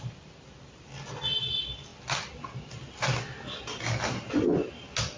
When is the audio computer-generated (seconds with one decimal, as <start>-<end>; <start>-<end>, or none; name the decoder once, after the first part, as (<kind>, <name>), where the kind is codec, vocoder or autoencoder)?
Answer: none

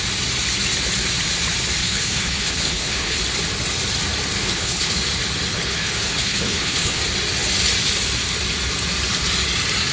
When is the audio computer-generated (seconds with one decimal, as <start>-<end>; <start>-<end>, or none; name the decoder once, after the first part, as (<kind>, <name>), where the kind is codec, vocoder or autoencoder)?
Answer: 1.8-3.2 (codec, HILCodec); 4.4-5.0; 5.5-7.0

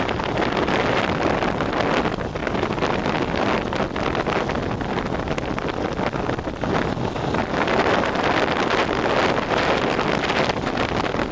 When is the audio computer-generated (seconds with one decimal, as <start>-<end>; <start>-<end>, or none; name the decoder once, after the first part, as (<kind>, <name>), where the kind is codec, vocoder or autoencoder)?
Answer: none

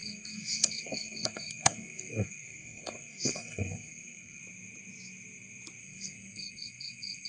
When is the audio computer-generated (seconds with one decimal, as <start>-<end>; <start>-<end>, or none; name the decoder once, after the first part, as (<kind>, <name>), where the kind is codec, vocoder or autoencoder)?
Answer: 0.0-4.4 (codec, SNAC); 5.8-7.3

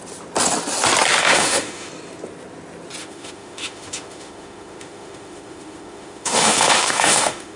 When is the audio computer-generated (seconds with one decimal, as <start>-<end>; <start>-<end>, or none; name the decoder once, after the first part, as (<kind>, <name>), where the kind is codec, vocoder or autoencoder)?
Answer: 1.2-1.9 (autoencoder, DAC-VAE); 3.0-7.6